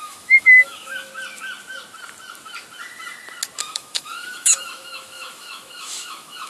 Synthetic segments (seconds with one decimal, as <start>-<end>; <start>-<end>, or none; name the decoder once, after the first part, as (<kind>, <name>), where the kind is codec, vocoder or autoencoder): 0.0-1.1 (autoencoder, DAC-VAE); 3.6-6.5